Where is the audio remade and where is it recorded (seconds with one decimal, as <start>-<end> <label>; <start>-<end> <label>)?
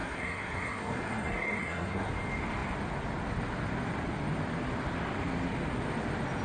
0.0-2.1 remade; 2.1-6.4 recorded